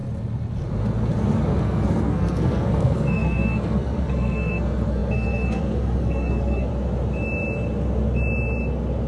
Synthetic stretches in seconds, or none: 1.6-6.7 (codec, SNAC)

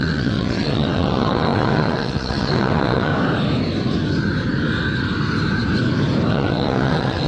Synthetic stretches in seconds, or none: 0.0-3.1 (vocoder, WaveNeXt); 6.3-7.3

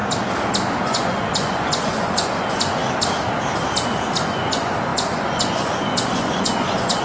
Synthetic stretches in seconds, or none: 0.8-2.8 (vocoder, Vocos); 4.2-7.0

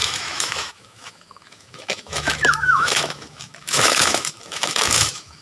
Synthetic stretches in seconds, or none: 0.0-5.4 (autoencoder, DAC-VAE)

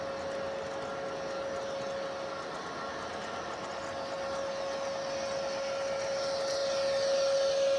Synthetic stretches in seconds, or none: none

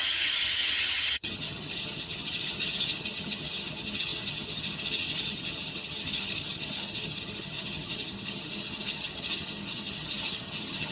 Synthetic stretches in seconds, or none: 0.0-10.9 (vocoder, HiFi-GAN)